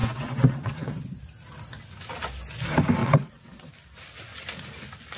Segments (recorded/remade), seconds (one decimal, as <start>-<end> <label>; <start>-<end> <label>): 0.0-0.9 remade; 0.9-3.0 recorded; 3.0-3.7 remade; 3.7-5.2 recorded